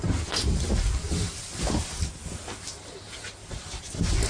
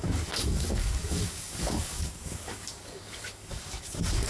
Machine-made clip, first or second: second